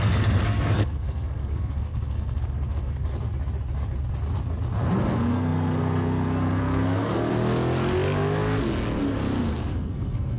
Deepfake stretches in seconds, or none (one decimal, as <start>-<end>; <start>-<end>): 0.0-3.1; 4.9-7.3; 9.7-10.4